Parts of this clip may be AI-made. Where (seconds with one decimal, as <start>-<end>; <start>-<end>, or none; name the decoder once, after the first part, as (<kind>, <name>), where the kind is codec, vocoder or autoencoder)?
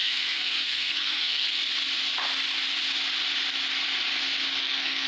0.0-1.6 (codec, SNAC); 4.6-5.1